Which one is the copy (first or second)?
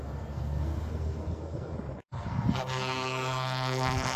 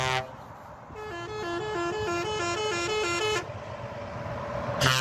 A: first